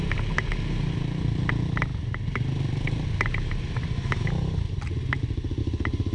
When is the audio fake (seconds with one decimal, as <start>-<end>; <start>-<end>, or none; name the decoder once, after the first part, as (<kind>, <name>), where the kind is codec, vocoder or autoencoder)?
none